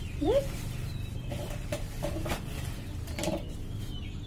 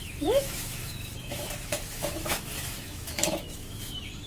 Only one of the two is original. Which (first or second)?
first